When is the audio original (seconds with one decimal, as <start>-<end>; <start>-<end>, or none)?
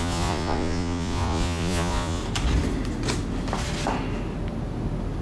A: 2.2-5.2